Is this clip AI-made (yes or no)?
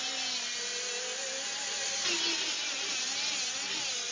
no